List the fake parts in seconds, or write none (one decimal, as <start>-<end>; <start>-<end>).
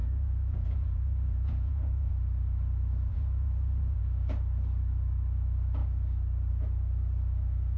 0.0-2.1; 3.1-4.0